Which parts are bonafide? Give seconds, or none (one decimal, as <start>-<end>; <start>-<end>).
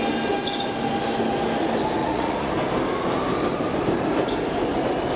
0.0-2.0; 2.5-5.2